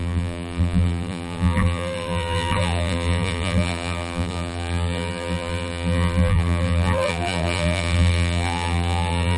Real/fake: fake